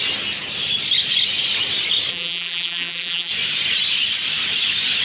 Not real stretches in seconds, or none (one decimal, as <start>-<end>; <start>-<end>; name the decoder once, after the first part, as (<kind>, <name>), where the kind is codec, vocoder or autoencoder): 2.1-3.3 (vocoder, BigVGAN v2)